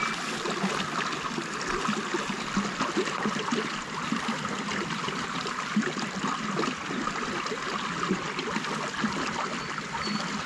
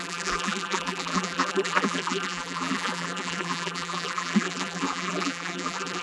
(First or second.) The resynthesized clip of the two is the second